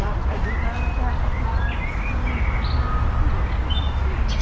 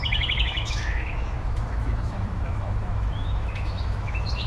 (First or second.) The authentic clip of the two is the first